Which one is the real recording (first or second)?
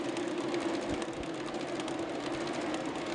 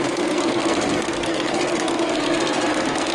first